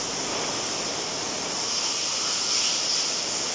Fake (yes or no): yes